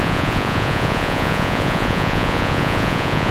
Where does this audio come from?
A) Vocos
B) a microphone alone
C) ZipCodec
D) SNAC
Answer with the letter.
A